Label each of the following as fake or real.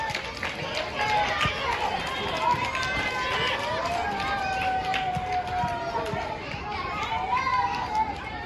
real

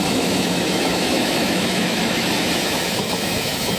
fake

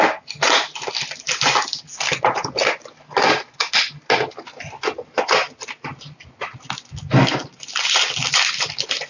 real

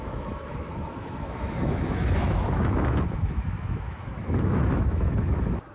fake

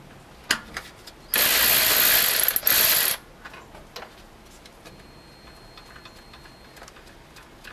real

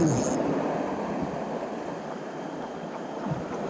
real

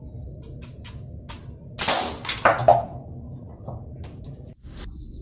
real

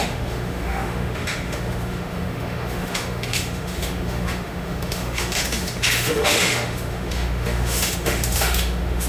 fake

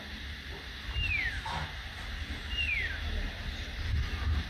real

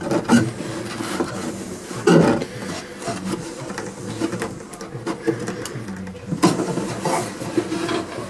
real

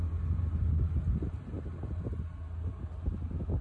real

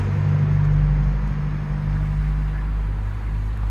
real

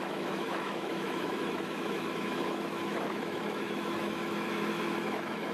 fake